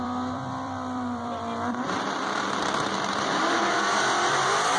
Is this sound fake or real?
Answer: fake